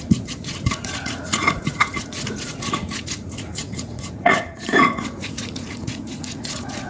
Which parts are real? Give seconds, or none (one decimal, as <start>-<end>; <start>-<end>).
none